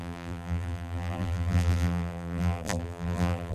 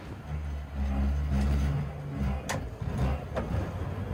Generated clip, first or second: first